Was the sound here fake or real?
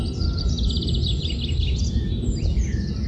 real